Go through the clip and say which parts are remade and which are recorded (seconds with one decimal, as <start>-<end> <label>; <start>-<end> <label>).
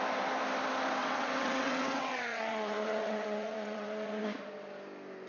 0.0-1.0 recorded; 1.0-4.2 remade; 4.2-5.3 recorded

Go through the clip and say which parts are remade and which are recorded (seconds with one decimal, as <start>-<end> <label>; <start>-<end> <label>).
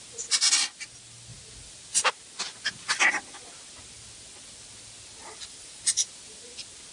0.0-5.2 recorded; 5.2-6.1 remade; 6.1-6.9 recorded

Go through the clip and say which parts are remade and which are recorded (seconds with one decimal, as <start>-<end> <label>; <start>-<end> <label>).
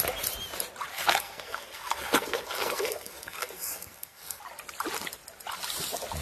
0.0-0.9 recorded; 0.9-4.4 remade; 4.4-6.2 recorded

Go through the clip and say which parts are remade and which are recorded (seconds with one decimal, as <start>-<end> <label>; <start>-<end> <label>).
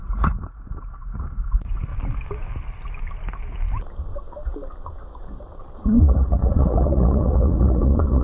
0.0-1.9 remade; 1.9-6.0 recorded; 6.0-8.2 remade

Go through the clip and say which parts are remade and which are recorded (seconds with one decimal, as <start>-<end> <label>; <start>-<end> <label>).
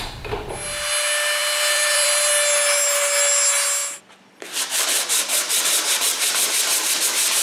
0.0-1.4 recorded; 1.4-2.3 remade; 2.3-3.8 recorded; 3.8-7.0 remade; 7.0-7.4 recorded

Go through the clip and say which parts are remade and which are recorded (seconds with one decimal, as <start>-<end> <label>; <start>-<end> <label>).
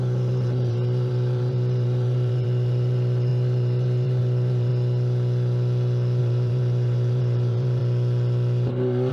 0.0-4.7 remade; 4.7-6.2 recorded; 6.2-7.8 remade; 7.8-9.1 recorded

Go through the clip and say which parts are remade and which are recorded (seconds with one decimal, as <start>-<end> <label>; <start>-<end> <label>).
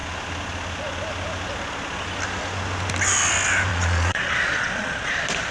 0.0-3.7 recorded; 3.7-5.1 remade; 5.1-5.5 recorded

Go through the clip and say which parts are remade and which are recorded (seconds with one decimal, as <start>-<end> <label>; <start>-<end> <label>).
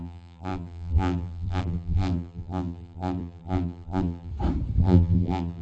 0.0-4.3 remade; 4.3-4.8 recorded; 4.8-5.6 remade